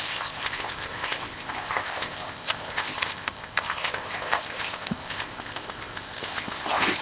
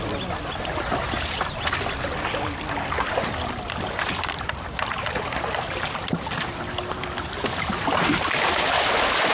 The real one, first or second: second